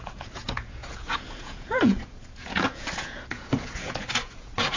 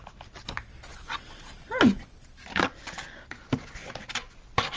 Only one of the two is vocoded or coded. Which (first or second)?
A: first